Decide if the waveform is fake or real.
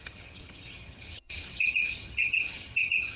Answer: fake